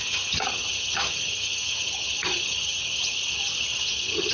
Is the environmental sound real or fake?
fake